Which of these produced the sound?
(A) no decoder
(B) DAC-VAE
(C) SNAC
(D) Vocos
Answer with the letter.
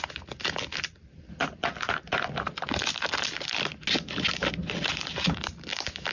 A